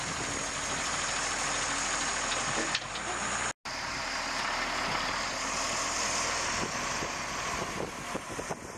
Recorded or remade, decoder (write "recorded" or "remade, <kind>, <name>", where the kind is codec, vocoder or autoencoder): recorded